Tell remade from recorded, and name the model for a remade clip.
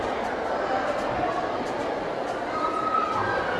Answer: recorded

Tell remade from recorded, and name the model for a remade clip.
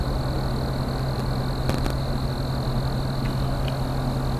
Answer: recorded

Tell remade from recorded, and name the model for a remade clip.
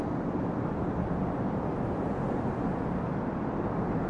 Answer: recorded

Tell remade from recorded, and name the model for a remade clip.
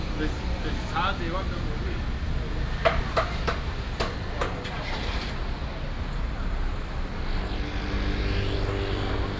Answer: recorded